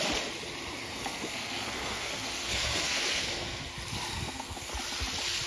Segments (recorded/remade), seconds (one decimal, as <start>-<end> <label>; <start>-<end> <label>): 0.0-0.8 recorded; 0.8-3.6 remade; 3.6-4.1 recorded; 4.1-4.7 remade; 4.7-5.5 recorded